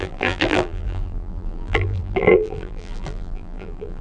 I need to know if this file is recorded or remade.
remade